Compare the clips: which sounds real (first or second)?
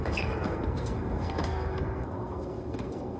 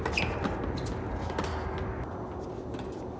second